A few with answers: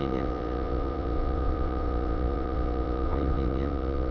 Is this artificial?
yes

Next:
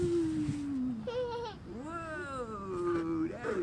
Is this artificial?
no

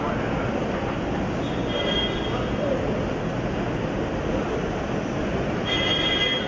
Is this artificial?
no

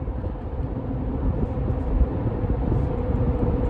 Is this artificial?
yes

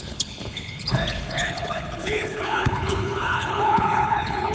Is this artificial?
yes